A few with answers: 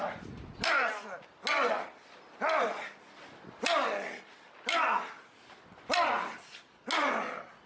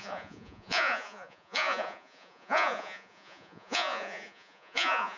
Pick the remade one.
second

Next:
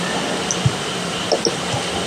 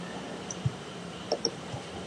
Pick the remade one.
second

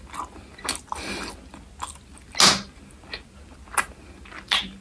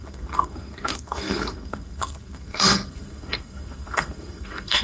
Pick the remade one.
second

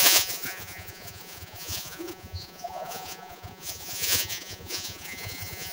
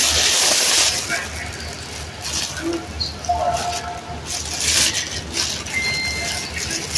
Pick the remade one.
first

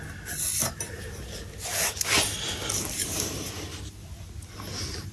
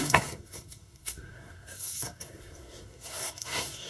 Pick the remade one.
second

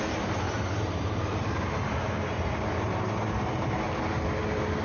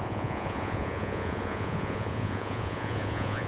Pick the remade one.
second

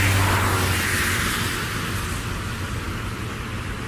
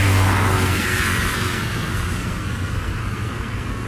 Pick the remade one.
second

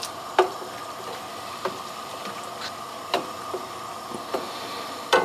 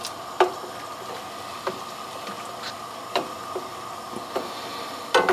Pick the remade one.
first